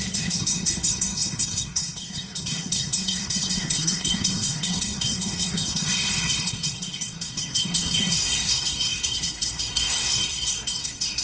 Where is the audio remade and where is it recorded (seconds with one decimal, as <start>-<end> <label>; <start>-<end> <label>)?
0.0-11.2 remade